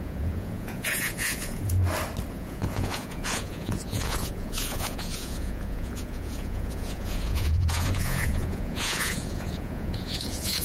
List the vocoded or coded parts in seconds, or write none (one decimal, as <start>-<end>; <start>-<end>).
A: 0.0-1.8; 2.3-10.6